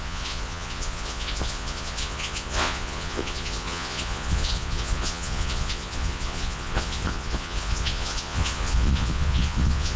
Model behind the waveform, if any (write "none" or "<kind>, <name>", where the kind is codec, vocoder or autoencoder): vocoder, Vocos